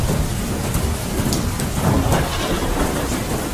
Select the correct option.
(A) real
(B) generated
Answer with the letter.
A